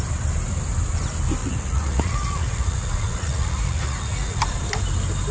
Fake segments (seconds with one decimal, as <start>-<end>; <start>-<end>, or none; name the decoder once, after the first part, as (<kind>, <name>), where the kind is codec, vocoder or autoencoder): 1.4-4.4 (vocoder, Vocos)